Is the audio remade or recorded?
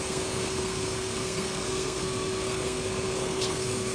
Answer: remade